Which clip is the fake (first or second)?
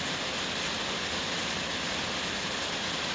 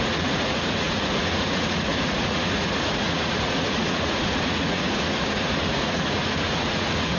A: second